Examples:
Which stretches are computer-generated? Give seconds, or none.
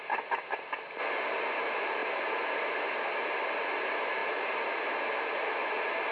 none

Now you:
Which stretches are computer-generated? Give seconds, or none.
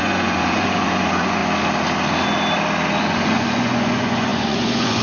0.0-1.4; 3.0-5.0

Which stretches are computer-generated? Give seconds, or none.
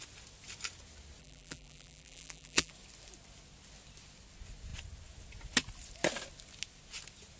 1.2-2.7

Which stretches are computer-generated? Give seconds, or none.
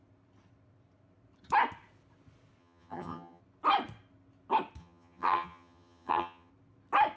2.6-3.4; 4.8-6.5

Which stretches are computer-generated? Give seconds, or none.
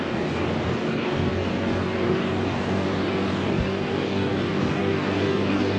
0.0-5.8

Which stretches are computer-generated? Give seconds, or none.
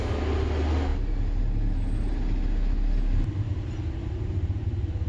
none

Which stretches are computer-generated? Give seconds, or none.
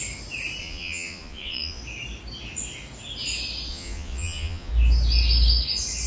0.6-1.8; 3.7-4.7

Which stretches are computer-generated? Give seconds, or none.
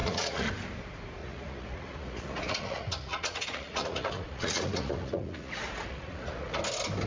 0.0-0.5; 1.2-5.5; 5.9-6.6